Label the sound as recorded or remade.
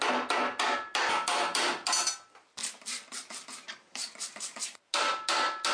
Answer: recorded